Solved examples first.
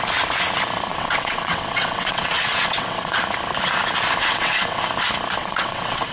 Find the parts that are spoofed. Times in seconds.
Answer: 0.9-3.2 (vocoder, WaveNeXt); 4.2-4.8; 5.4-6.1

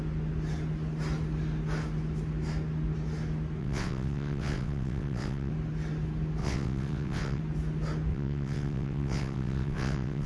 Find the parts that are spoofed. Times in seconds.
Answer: 3.6-5.5 (vocoder, WaveNeXt); 6.4-7.4; 8.1-10.3

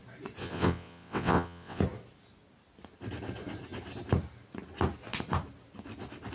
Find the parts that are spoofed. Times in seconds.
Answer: 0.4-1.8 (vocoder, WaveNeXt)

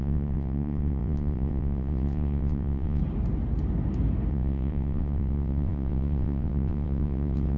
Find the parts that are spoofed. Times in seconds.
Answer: 0.0-3.0 (vocoder, WaveNeXt); 4.3-7.6

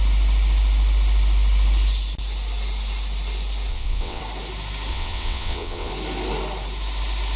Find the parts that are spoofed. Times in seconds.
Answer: 3.7-4.2 (vocoder, WaveNeXt); 4.9-5.9

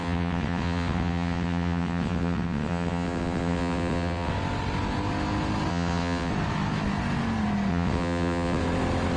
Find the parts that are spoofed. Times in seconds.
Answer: 0.0-4.3 (vocoder, WaveNeXt); 5.7-6.3; 7.7-8.6